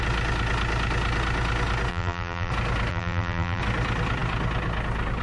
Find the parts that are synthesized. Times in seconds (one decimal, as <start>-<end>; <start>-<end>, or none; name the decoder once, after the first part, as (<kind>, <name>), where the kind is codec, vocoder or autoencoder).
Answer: 1.9-2.5 (vocoder, BigVGAN v2); 2.9-3.6